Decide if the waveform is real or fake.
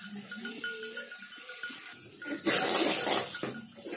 real